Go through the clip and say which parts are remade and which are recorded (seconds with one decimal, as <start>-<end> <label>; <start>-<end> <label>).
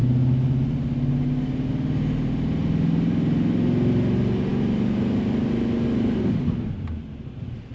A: 0.0-7.7 recorded